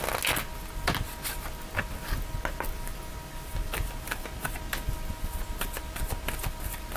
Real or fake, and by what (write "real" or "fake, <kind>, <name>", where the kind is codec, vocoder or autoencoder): real